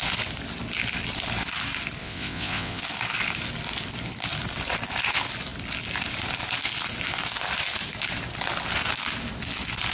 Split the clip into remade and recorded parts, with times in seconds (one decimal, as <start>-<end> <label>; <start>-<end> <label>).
0.0-2.0 recorded; 2.0-2.8 remade; 2.8-9.9 recorded